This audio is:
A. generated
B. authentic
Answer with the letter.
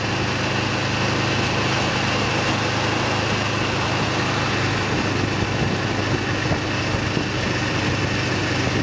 B